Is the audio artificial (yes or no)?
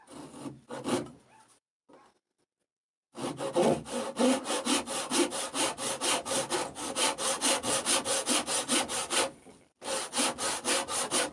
no